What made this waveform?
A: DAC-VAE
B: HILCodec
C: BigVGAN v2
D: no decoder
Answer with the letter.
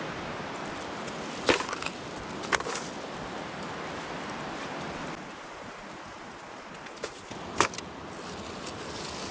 D